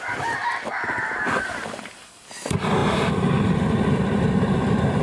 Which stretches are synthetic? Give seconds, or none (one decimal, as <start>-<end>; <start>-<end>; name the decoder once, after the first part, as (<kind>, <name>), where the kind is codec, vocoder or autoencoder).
0.0-0.4 (vocoder, BigVGAN v2); 1.5-5.0